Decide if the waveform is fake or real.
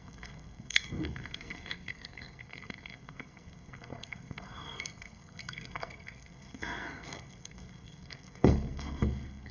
fake